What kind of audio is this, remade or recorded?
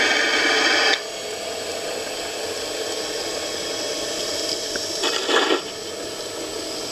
recorded